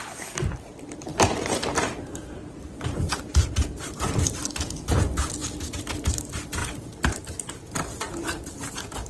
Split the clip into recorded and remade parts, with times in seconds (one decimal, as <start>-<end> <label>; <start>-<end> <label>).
0.0-1.1 recorded; 1.1-2.7 remade; 2.7-9.1 recorded